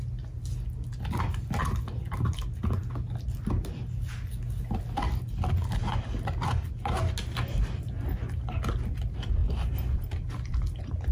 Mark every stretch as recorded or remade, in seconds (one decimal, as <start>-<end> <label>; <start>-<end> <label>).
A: 0.0-11.1 recorded